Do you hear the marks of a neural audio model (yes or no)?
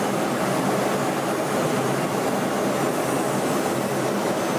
no